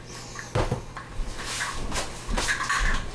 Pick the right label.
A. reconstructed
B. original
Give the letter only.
B